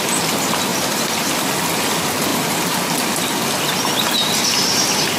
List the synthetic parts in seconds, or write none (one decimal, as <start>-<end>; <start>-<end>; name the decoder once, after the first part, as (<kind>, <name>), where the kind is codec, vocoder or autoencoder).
0.7-1.4 (vocoder, BigVGAN v2); 2.3-3.2